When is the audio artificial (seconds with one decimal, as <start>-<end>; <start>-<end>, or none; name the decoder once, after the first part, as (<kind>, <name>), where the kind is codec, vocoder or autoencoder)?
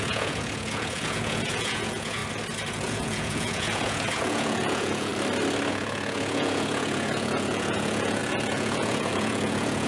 0.0-2.2 (vocoder, Vocos); 2.8-5.1; 5.7-9.9